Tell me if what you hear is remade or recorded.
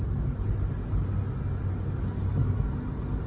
recorded